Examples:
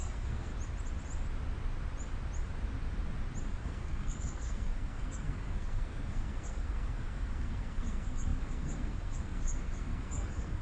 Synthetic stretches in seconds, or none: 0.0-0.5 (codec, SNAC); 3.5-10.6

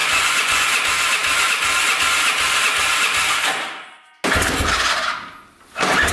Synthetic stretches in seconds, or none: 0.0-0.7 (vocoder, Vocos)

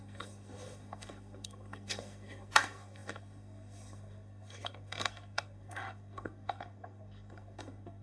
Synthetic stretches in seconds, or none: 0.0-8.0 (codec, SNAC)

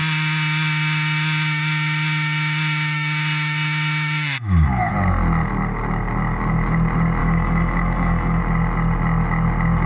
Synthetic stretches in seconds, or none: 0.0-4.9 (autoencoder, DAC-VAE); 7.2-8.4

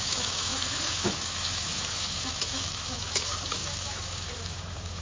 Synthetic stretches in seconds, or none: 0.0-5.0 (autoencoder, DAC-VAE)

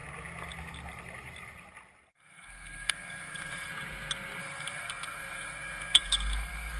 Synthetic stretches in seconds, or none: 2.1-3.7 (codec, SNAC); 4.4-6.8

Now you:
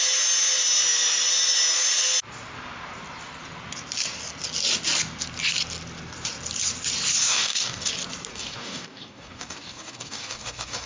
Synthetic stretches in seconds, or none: 7.2-7.9 (codec, DAC); 8.3-10.9

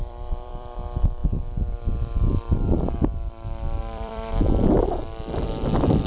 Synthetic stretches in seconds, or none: 0.0-1.2 (vocoder, BigVGAN v2); 2.3-6.1